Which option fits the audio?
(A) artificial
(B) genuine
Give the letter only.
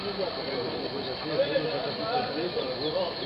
B